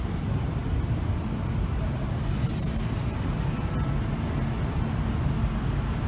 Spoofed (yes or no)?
no